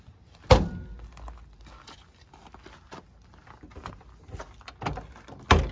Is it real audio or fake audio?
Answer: real